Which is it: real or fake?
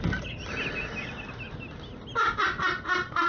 real